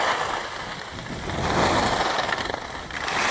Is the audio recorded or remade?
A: recorded